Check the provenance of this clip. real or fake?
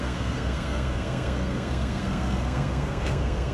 fake